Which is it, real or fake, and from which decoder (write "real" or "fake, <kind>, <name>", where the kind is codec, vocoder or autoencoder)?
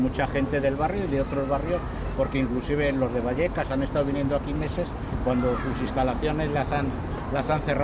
real